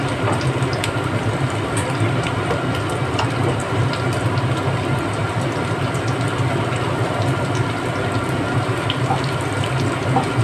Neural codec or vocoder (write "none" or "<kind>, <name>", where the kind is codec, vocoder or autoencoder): none